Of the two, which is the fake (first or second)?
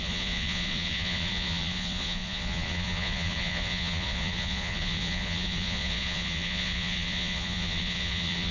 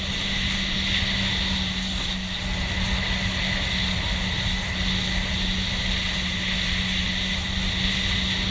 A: first